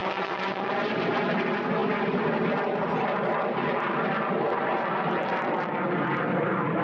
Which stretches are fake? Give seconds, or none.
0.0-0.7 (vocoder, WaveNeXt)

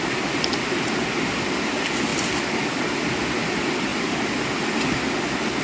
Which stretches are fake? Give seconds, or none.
none

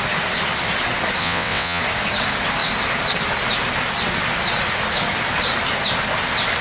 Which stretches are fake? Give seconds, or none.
1.2-1.8 (vocoder, WaveNeXt)

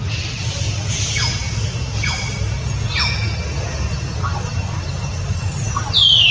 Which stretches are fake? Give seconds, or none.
none

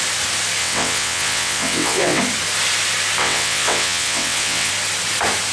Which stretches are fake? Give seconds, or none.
0.6-2.2 (vocoder, WaveNeXt); 3.2-4.7

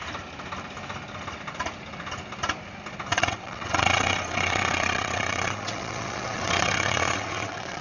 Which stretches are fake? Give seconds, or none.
3.1-7.8 (vocoder, WaveNeXt)